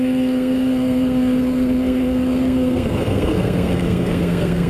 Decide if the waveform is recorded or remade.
remade